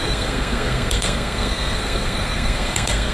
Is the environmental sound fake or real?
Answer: fake